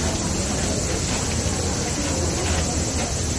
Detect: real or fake real